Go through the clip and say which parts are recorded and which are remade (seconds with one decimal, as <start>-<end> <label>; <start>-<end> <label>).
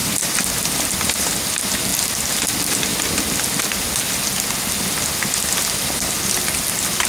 0.0-1.3 remade; 1.3-7.1 recorded